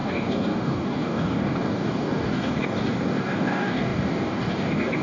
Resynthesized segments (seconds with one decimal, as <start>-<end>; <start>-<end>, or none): 0.0-5.0